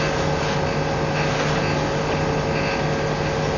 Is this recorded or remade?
recorded